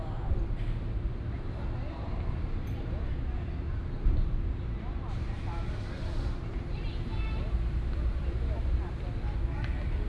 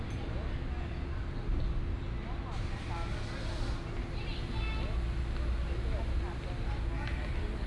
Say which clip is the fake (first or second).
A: first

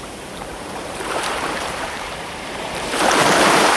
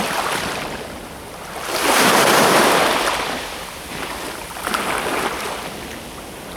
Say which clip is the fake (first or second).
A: first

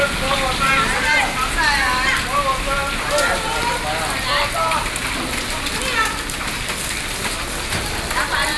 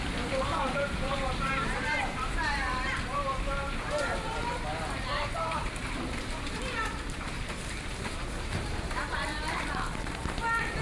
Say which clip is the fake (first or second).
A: second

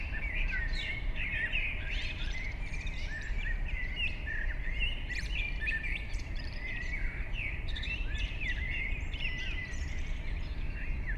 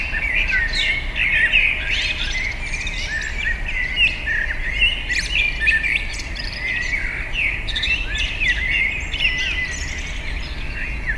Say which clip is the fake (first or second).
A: first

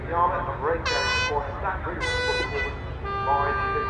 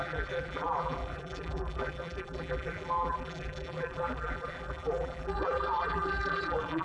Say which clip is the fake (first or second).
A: second